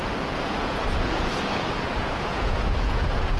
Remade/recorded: remade